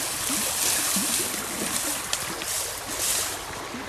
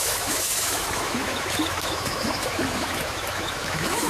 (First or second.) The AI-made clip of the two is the second